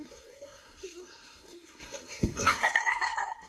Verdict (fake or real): fake